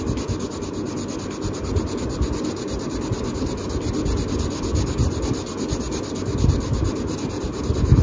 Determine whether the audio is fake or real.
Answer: real